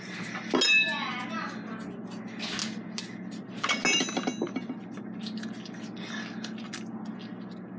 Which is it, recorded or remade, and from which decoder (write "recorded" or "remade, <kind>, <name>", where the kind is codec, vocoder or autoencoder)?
recorded